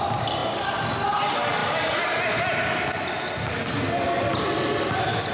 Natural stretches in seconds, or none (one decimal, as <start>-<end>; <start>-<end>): 0.0-5.3